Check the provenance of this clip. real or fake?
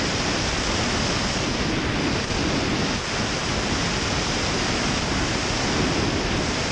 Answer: real